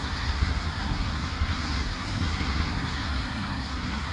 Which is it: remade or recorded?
remade